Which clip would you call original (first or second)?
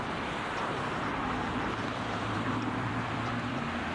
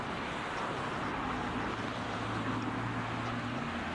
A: second